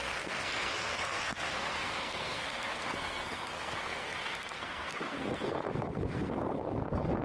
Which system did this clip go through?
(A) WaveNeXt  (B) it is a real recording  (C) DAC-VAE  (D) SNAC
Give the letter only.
D